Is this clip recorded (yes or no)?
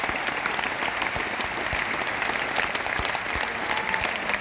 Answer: yes